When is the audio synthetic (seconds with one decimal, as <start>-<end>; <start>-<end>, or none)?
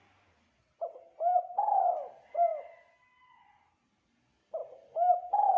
none